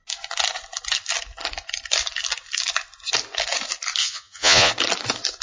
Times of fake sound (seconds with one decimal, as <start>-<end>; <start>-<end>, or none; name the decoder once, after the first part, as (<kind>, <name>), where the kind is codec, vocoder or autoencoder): 4.0-4.7 (vocoder, Vocos)

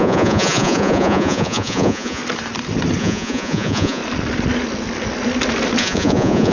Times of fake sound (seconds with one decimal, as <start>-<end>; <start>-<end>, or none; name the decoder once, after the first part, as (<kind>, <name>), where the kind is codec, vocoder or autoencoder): 0.0-2.2 (vocoder, Vocos); 3.0-4.0; 5.8-6.5

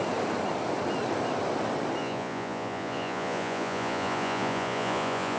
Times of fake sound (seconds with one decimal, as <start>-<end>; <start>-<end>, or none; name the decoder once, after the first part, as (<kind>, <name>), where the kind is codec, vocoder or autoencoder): 2.0-5.4 (vocoder, Vocos)